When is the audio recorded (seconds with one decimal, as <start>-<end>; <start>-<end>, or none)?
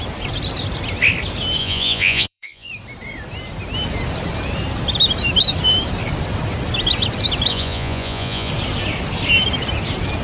0.0-1.6; 2.7-7.5; 8.5-10.2